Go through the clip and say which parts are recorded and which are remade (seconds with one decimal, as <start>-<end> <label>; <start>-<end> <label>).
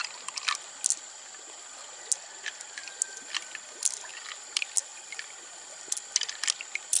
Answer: 0.0-7.0 recorded